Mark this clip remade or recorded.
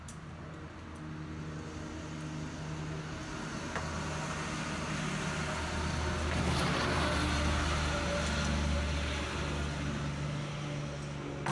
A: recorded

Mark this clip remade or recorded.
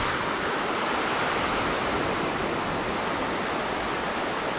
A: recorded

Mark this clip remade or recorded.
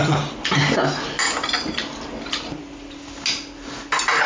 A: recorded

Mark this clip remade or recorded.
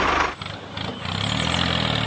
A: recorded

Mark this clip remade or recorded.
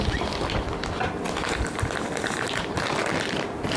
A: recorded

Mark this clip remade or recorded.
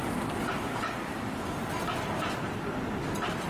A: recorded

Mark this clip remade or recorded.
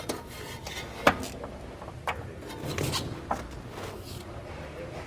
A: recorded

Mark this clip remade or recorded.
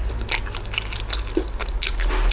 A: recorded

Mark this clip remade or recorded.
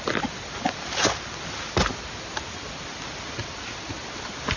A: recorded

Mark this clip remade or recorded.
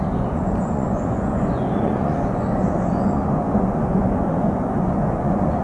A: remade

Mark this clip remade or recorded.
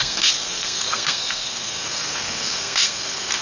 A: remade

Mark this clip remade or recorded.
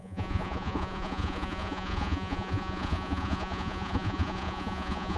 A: remade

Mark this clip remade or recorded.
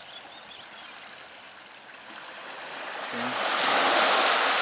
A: recorded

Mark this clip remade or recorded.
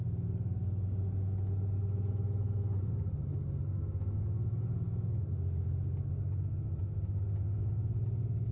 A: recorded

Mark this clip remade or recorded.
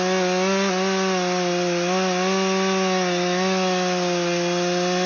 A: recorded